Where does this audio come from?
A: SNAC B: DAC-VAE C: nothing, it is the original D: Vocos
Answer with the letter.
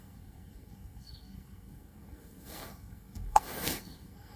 A